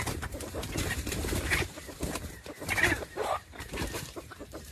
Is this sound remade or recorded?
remade